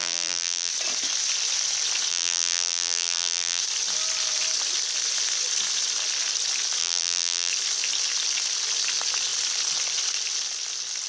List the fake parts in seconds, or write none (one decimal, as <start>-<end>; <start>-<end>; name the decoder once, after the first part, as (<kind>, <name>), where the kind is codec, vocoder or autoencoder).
0.0-0.7 (vocoder, BigVGAN v2); 2.1-3.6; 6.8-7.5